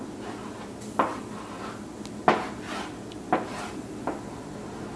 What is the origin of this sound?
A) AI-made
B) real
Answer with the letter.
B